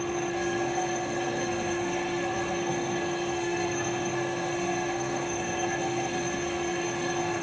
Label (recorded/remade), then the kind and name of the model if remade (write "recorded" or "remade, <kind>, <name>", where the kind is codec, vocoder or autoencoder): remade, codec, SNAC